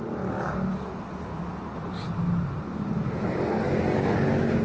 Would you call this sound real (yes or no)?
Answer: yes